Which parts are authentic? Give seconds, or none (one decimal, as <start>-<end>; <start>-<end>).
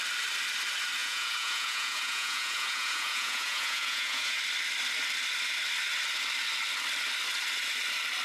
0.0-1.0; 4.4-8.2